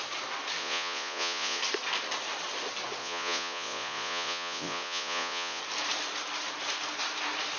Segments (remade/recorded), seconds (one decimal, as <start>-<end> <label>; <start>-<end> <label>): 0.0-0.6 recorded; 0.6-1.6 remade; 1.6-3.0 recorded; 3.0-5.6 remade; 5.6-7.6 recorded